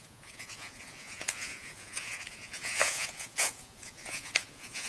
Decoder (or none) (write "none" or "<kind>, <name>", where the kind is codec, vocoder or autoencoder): vocoder, Vocos